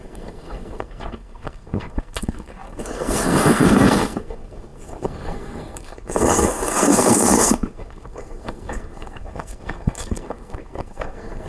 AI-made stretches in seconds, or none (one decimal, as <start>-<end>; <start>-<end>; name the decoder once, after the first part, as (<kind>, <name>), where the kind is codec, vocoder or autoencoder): 0.0-11.5 (codec, SNAC)

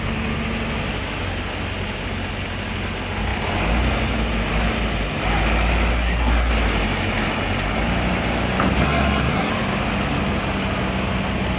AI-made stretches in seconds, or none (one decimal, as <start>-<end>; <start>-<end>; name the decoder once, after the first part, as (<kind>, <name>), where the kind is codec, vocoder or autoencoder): 5.9-6.5 (codec, SNAC); 8.8-9.5

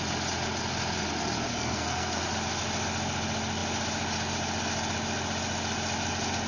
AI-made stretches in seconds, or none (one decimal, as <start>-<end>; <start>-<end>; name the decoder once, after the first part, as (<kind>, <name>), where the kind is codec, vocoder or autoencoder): 1.5-2.2 (codec, SNAC)

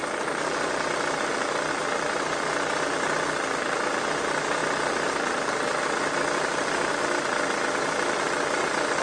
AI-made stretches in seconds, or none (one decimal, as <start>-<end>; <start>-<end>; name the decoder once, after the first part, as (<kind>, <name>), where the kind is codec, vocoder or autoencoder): none

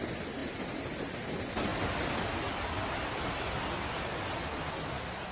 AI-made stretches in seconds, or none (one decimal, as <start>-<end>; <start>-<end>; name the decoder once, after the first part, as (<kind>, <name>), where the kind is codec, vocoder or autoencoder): none

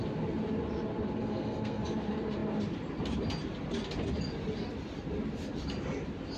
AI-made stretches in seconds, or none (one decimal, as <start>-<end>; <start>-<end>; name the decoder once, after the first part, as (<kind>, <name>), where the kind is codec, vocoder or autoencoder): 1.2-1.8 (codec, SNAC)

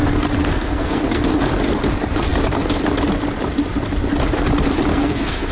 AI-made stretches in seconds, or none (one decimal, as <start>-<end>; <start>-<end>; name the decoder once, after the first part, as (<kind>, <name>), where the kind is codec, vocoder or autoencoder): 0.4-1.2 (codec, SNAC); 4.9-5.5

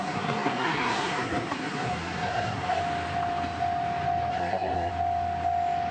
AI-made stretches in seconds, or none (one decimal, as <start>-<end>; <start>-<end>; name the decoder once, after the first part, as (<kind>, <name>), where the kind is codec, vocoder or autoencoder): 0.0-2.8 (codec, SNAC); 4.3-4.9